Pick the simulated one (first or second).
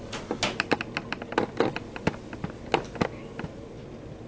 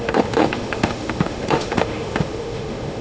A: second